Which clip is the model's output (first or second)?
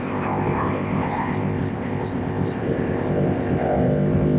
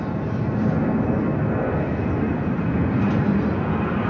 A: first